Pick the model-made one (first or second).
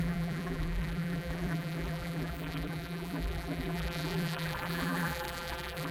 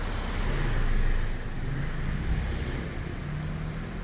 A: first